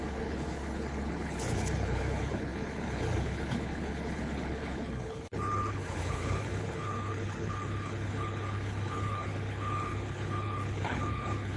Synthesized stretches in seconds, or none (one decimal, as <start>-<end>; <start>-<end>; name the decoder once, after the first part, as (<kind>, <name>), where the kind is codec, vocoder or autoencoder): 0.0-11.6 (codec, HILCodec)